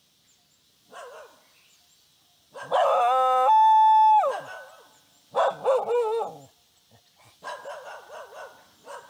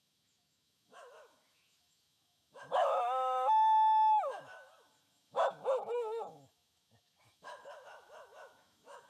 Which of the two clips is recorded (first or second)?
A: first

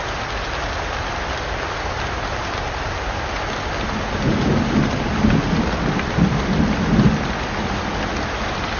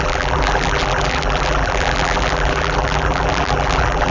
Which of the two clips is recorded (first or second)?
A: first